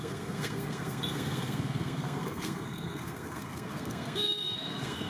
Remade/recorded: remade